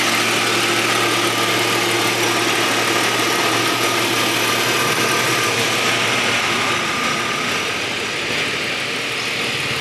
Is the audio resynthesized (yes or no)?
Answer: no